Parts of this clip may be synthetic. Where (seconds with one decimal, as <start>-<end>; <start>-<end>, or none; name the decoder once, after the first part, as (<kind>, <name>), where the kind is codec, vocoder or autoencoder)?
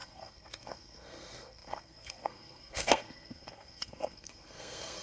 0.0-5.0 (codec, SNAC)